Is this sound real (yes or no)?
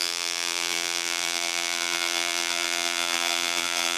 no